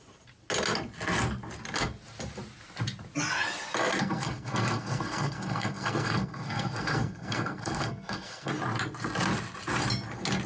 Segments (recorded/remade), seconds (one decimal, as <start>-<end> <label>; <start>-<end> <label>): 0.0-4.0 recorded; 4.0-8.5 remade; 8.5-10.5 recorded